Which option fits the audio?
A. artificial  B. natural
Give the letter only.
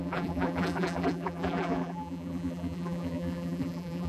A